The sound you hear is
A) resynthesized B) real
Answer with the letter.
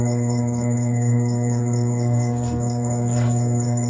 A